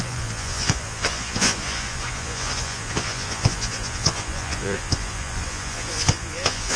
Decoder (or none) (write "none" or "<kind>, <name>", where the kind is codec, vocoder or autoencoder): vocoder, Vocos